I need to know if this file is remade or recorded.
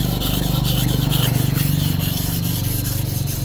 recorded